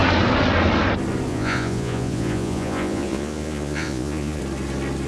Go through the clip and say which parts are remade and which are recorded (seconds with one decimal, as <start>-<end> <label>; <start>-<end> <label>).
0.0-1.3 recorded; 1.3-4.4 remade; 4.4-5.1 recorded